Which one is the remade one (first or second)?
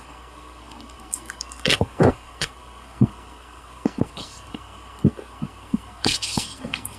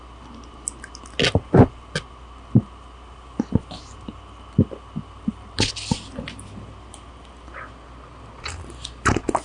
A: first